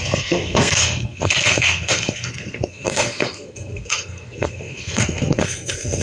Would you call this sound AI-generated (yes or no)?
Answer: yes